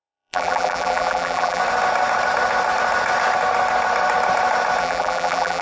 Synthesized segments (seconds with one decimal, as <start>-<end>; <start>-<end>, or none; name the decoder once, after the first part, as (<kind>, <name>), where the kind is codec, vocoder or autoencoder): 0.0-1.6 (vocoder, BigVGAN v2); 4.8-5.6